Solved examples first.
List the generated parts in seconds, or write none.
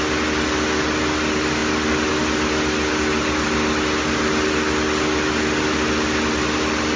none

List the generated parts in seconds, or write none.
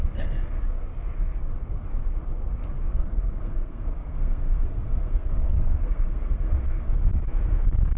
3.0-6.9